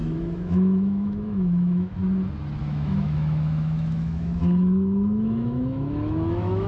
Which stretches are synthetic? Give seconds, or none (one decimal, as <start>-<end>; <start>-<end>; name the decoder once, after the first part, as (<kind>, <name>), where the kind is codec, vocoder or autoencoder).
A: 0.0-2.0 (autoencoder, DAC-VAE); 2.6-6.7